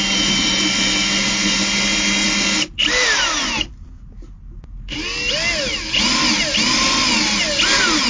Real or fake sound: real